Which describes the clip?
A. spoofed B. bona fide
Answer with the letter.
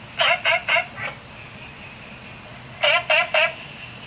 B